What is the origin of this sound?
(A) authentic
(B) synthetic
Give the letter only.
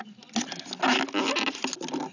A